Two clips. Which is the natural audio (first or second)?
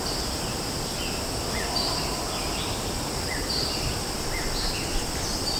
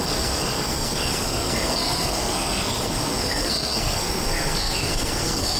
first